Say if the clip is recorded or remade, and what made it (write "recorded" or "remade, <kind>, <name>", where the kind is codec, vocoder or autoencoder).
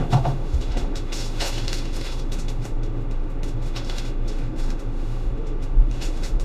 remade, autoencoder, DAC-VAE